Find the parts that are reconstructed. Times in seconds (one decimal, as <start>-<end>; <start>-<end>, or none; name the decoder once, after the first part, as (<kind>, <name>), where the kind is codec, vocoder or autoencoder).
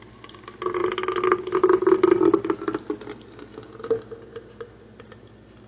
none